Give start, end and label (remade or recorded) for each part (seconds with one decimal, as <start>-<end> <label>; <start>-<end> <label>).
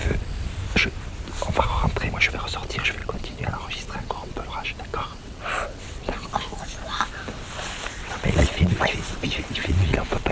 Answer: 0.0-3.0 recorded; 3.0-4.5 remade; 4.5-4.9 recorded; 4.9-6.3 remade; 6.3-8.0 recorded; 8.0-10.3 remade